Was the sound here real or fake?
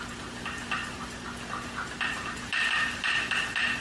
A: real